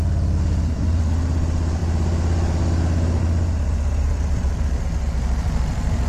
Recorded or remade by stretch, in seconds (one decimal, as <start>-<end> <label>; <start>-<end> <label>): 0.0-6.1 recorded